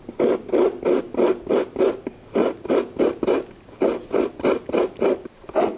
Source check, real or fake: fake